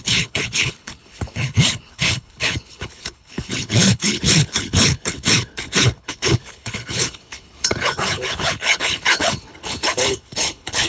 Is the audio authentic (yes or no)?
no